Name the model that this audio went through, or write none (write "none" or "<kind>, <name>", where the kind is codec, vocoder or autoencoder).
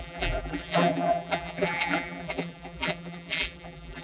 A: vocoder, BigVGAN v2